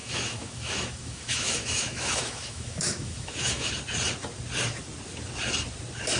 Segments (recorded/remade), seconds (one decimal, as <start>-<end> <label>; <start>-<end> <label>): 0.0-3.7 remade; 3.7-6.2 recorded